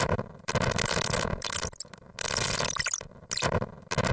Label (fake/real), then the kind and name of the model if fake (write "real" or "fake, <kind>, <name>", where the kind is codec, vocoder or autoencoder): real